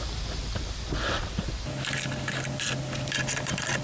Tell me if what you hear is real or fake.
fake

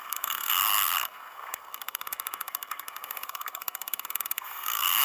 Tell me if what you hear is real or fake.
fake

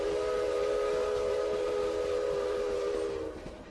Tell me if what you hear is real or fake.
real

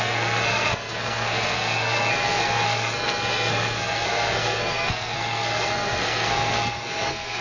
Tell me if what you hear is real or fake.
fake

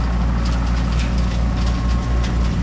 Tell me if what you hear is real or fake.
real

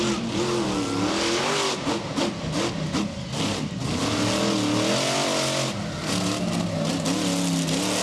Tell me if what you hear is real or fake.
real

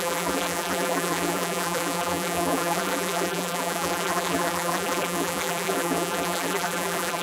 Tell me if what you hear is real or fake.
fake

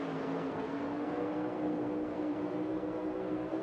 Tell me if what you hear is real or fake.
fake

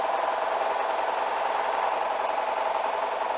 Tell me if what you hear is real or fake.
real